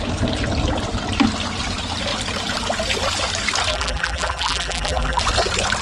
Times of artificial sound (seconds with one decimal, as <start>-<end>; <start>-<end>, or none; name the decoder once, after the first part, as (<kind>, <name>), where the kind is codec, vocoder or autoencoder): 3.7-5.2 (vocoder, BigVGAN v2)